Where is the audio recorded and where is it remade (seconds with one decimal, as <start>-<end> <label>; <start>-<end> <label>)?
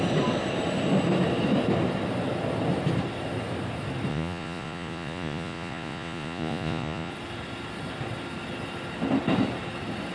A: 0.0-4.1 recorded; 4.1-7.1 remade; 7.1-10.1 recorded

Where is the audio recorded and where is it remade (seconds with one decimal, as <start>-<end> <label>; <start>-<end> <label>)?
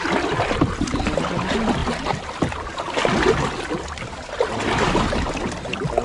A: 0.0-6.0 recorded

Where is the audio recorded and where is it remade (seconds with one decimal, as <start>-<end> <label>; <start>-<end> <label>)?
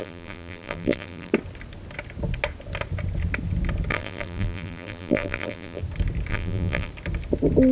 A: 0.0-1.3 remade; 1.3-3.9 recorded; 3.9-5.8 remade; 5.8-6.3 recorded; 6.3-6.9 remade; 6.9-7.7 recorded